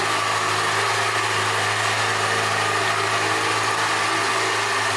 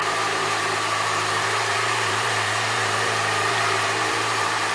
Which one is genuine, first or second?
first